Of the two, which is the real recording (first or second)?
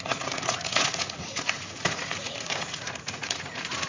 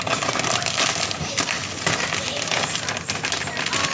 second